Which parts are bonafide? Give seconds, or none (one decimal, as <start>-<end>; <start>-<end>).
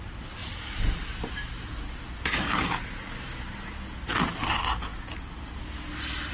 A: 0.0-6.3